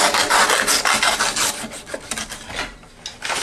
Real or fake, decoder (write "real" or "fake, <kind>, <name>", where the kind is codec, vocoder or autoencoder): real